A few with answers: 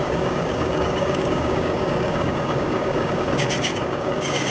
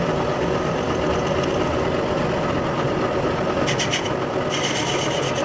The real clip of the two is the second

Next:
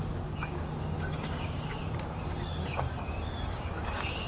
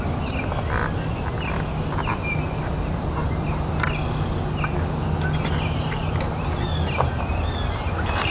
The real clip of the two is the second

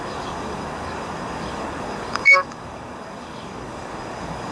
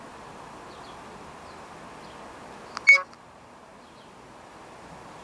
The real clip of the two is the second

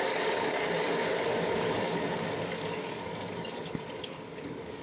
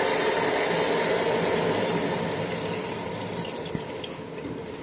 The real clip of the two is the second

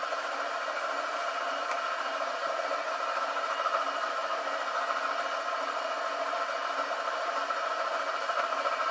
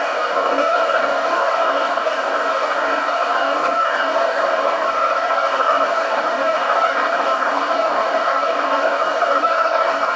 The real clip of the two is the first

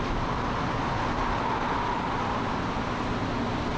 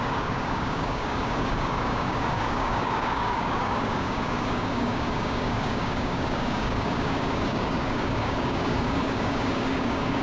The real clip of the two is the first